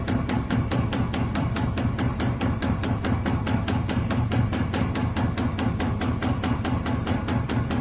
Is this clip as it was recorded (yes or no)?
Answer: no